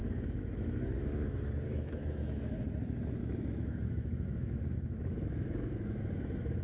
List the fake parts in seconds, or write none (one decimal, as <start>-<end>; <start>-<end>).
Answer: 0.0-2.6; 3.2-6.6